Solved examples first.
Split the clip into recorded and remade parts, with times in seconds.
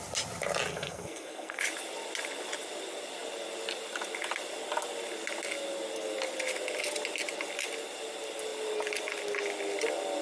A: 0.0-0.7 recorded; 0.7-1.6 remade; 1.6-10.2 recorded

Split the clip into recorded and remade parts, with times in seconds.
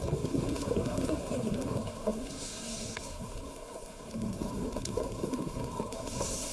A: 0.0-6.5 remade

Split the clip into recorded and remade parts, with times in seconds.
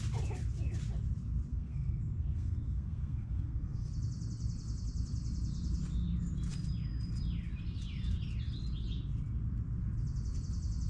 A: 0.0-1.5 recorded; 1.5-3.9 remade; 3.9-10.9 recorded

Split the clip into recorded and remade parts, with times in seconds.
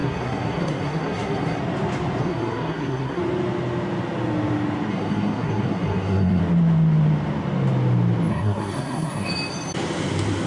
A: 0.0-1.6 remade; 1.6-2.2 recorded; 2.2-3.2 remade; 3.2-4.9 recorded; 4.9-6.4 remade; 6.4-8.3 recorded; 8.3-9.3 remade; 9.3-10.5 recorded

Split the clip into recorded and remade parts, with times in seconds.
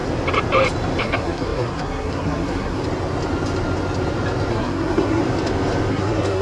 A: 0.0-1.0 recorded; 1.0-2.8 remade; 2.8-4.5 recorded; 4.5-5.2 remade; 5.2-5.9 recorded; 5.9-6.4 remade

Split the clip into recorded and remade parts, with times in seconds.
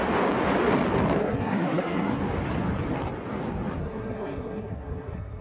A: 0.0-1.2 recorded; 1.2-2.2 remade; 2.2-3.8 recorded; 3.8-5.4 remade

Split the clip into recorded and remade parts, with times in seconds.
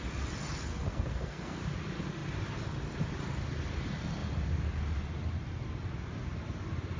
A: 0.0-0.7 recorded; 0.7-1.6 remade; 1.6-7.0 recorded